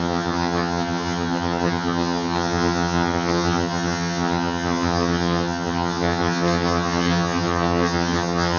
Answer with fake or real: fake